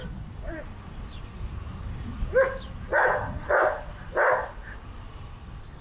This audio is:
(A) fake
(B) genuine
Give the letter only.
B